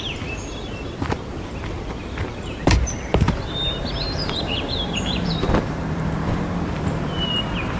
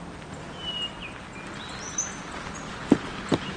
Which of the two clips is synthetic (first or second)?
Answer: first